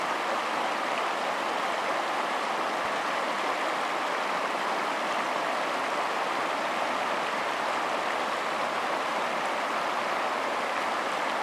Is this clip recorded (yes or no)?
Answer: yes